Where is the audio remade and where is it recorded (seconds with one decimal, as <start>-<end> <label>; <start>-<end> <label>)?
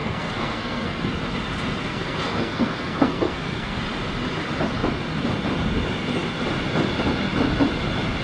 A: 0.0-1.1 remade; 1.1-1.8 recorded; 1.8-3.8 remade; 3.8-8.2 recorded